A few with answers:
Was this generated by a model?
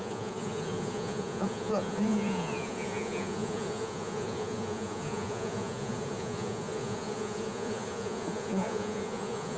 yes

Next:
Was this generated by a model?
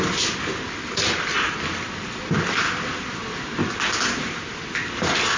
no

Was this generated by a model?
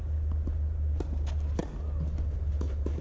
no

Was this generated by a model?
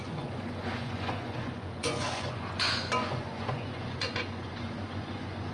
yes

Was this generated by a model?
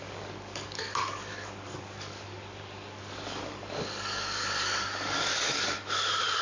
yes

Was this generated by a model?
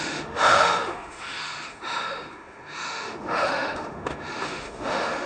yes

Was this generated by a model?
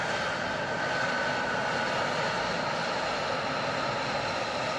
no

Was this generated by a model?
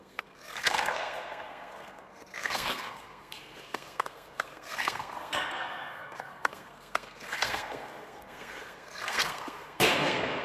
yes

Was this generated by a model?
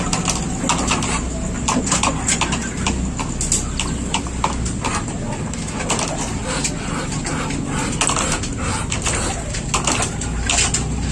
no